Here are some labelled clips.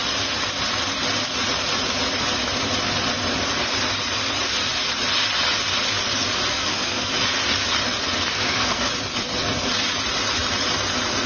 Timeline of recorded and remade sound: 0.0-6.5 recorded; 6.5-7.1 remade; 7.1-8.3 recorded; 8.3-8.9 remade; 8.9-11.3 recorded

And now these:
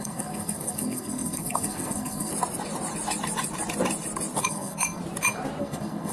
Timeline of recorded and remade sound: 0.0-2.3 remade; 2.3-4.4 recorded; 4.4-5.0 remade; 5.0-5.6 recorded; 5.6-6.1 remade